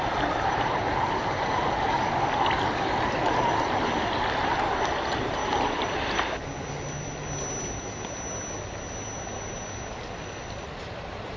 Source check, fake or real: real